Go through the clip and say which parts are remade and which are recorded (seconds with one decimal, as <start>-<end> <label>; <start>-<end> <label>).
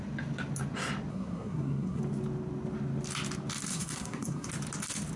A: 0.0-1.1 recorded; 1.1-2.0 remade; 2.0-3.7 recorded; 3.7-4.5 remade; 4.5-5.2 recorded